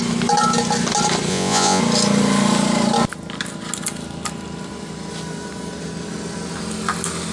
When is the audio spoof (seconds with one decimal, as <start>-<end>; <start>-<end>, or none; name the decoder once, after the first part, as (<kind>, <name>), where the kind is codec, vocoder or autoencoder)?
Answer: 1.3-1.8 (vocoder, Vocos)